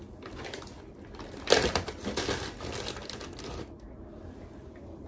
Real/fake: real